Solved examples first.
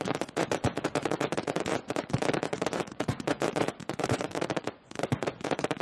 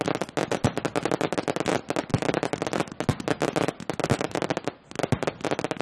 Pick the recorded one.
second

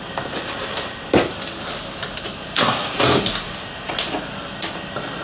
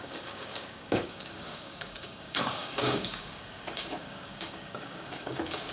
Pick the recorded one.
first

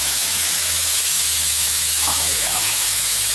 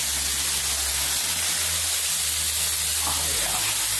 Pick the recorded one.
second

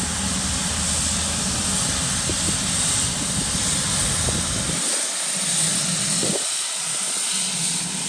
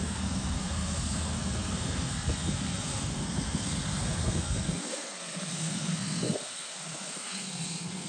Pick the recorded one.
first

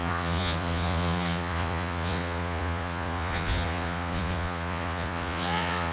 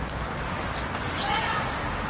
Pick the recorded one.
second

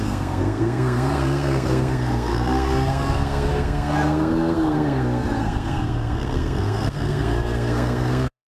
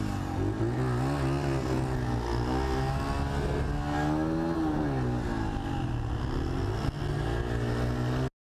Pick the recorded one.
second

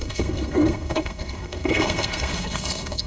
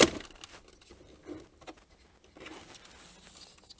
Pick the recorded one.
second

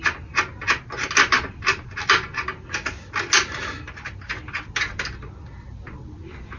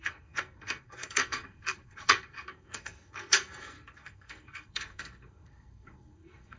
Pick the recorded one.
first